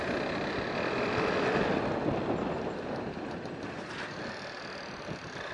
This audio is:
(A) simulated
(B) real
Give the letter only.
B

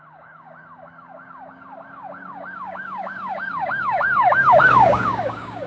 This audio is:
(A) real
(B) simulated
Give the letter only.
B